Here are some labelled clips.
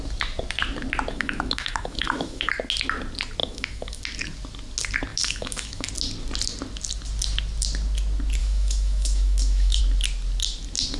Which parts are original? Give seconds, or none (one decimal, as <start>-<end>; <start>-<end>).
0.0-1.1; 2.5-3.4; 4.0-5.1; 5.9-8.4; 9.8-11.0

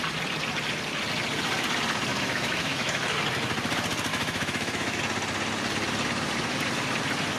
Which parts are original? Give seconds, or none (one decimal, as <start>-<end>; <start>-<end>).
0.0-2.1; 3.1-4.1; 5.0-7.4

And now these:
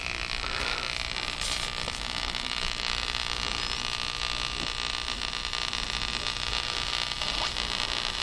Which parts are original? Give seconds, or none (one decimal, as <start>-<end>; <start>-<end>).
0.0-1.8; 3.6-8.2

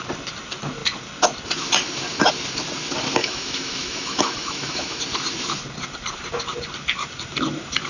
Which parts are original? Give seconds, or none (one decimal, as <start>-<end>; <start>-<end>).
0.0-3.2; 5.0-7.9

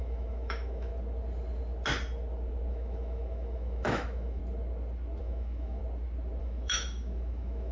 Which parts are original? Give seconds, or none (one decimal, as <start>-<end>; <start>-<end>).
0.9-2.7; 4.4-5.2; 5.8-6.4

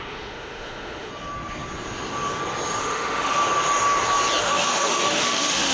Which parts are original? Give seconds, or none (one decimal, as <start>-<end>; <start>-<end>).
1.1-2.8; 3.4-4.4

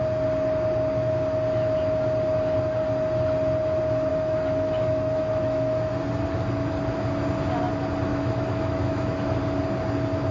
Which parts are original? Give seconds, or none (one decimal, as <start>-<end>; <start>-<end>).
0.0-4.1; 5.9-8.1; 9.4-10.3